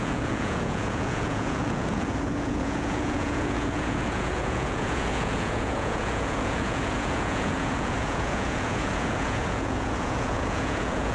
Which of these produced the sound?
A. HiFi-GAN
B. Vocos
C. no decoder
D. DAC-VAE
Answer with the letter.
B